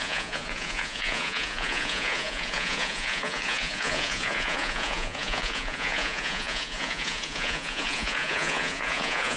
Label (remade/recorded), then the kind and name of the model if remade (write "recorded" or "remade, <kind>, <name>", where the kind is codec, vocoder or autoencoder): remade, vocoder, Vocos